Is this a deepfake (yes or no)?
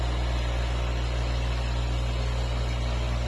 no